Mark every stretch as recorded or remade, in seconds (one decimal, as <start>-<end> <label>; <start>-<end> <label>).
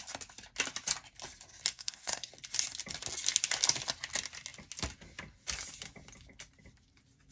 0.0-1.7 recorded; 1.7-2.3 remade; 2.3-7.3 recorded